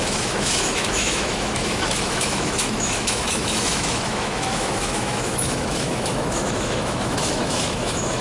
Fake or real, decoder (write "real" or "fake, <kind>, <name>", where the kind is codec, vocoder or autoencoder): fake, autoencoder, DAC-VAE